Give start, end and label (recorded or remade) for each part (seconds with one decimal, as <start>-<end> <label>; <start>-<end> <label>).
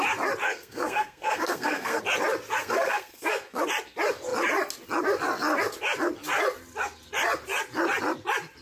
0.0-0.4 recorded; 0.4-2.0 remade; 2.0-2.6 recorded; 2.6-3.7 remade; 3.7-8.6 recorded